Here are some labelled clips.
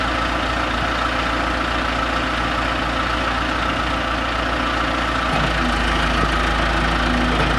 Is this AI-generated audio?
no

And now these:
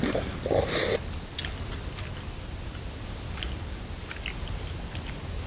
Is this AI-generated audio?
no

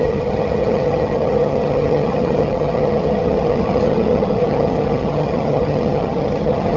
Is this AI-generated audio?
yes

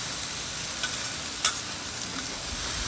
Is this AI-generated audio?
no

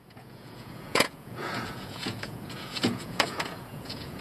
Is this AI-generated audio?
yes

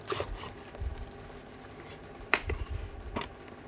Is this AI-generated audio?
no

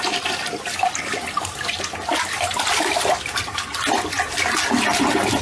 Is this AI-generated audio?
no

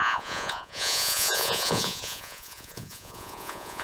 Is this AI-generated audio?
yes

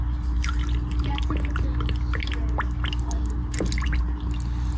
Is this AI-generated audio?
no